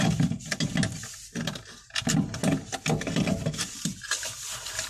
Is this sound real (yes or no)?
yes